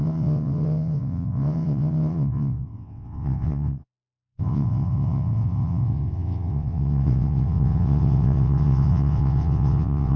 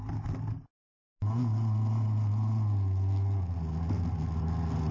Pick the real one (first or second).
second